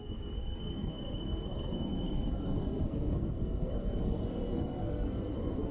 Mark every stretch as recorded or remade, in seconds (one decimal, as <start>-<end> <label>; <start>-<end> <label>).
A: 0.0-5.7 remade